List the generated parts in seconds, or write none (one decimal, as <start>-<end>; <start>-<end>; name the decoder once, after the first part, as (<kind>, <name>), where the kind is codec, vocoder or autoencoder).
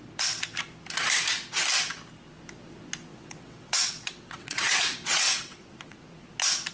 3.1-6.1 (vocoder, WaveNeXt)